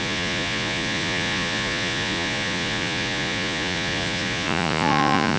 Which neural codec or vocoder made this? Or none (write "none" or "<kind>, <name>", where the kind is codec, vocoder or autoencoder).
vocoder, Vocos